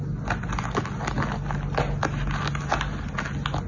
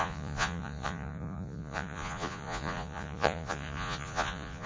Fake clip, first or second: second